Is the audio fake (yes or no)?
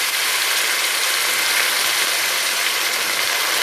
no